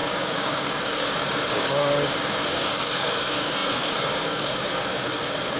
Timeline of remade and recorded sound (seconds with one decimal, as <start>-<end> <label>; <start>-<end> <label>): 0.0-5.6 remade